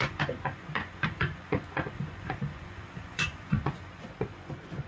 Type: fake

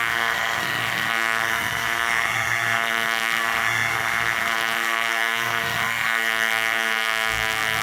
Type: fake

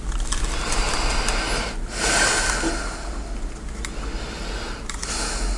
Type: real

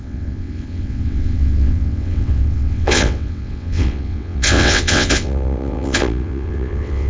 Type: fake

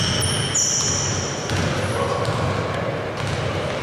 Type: real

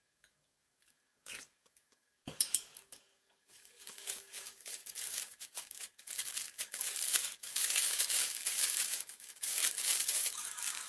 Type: fake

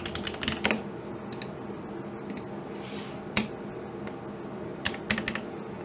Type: real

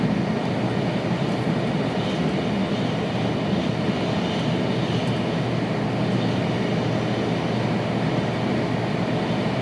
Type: real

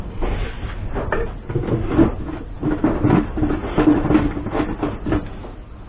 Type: real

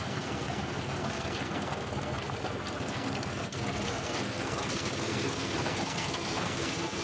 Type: fake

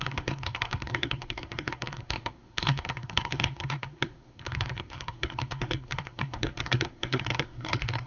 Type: fake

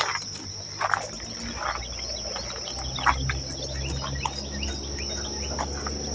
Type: real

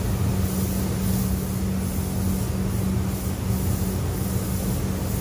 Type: real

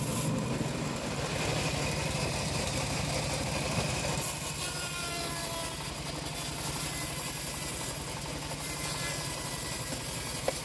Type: real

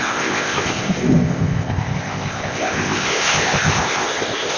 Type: fake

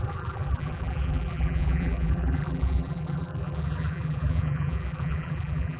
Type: fake